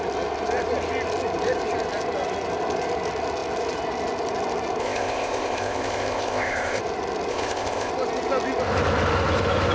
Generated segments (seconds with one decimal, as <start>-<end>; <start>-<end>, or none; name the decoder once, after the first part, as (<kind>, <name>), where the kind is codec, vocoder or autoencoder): 4.8-6.8 (codec, ZipCodec); 7.3-7.9